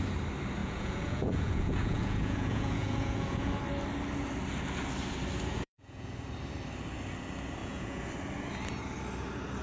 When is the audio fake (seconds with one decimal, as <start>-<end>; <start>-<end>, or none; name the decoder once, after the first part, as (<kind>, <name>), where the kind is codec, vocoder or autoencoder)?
0.6-3.6 (vocoder, Vocos); 5.5-6.1; 7.6-8.1